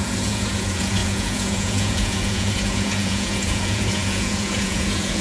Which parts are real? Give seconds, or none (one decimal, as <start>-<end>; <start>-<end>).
none

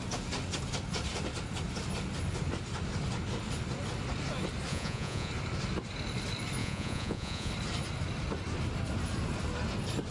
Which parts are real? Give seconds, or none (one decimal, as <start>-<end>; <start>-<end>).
0.0-4.7; 5.3-6.6; 7.5-10.1

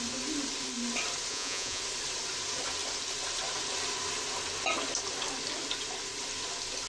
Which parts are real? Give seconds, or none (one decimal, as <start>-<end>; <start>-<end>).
0.0-1.3; 1.8-6.9

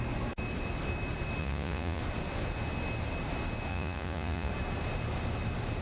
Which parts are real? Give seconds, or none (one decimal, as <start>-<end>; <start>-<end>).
0.0-1.4; 2.0-3.7; 4.5-5.8

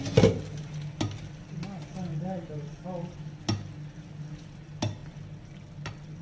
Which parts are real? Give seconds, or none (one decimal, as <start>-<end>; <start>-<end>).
0.0-6.2

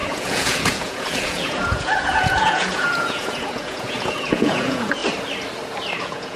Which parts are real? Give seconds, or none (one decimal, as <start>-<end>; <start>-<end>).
5.0-6.0

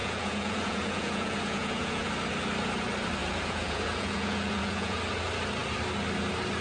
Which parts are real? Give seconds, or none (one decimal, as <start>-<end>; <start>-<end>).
2.1-3.2; 5.0-6.6